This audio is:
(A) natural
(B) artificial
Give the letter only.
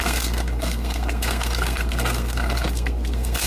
B